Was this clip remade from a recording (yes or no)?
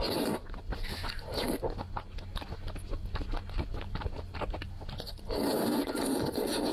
no